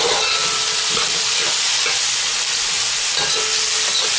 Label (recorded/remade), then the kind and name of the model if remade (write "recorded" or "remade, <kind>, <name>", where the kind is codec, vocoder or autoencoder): recorded